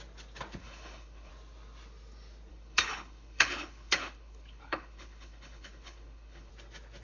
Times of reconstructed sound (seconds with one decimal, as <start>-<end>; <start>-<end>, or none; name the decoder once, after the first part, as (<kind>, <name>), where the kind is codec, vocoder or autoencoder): 0.6-1.3 (codec, HILCodec); 2.5-6.5